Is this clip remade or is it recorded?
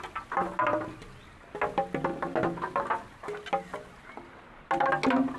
recorded